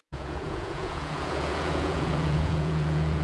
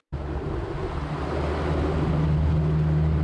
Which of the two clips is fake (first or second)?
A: first